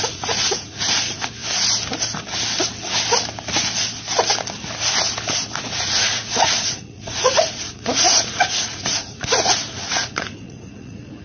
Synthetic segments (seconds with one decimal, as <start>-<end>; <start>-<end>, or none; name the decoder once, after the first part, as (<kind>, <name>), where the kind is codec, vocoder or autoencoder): 0.0-1.4 (vocoder, Vocos); 5.6-11.2